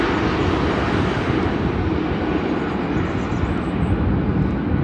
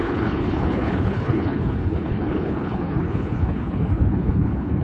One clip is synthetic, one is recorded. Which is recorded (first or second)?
first